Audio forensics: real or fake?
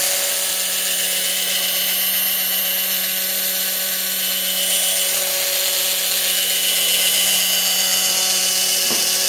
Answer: real